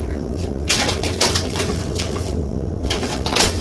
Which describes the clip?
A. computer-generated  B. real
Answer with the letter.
A